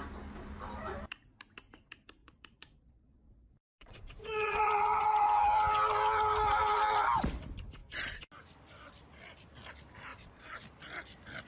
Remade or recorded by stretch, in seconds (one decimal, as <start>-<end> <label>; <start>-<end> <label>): 0.0-2.2 recorded; 2.2-5.2 remade; 5.2-10.1 recorded; 10.1-10.6 remade; 10.6-11.5 recorded